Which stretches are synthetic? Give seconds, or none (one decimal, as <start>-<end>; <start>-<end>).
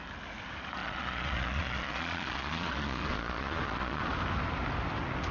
0.8-4.0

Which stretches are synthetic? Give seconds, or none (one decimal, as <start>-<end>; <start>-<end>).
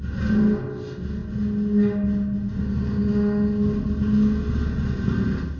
none